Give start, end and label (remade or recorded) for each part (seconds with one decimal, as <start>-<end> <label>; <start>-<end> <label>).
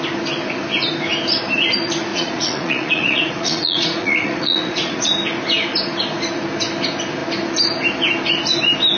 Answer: 0.0-2.1 recorded; 2.1-5.1 remade; 5.1-9.0 recorded